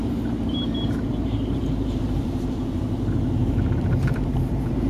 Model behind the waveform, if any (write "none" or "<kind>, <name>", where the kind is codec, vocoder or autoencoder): vocoder, BigVGAN v2